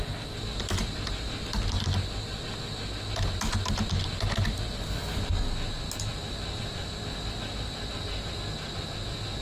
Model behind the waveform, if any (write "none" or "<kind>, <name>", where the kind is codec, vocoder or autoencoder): none